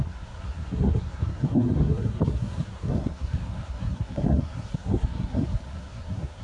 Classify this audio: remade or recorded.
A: remade